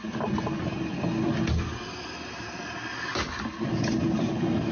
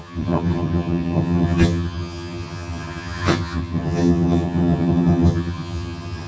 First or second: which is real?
first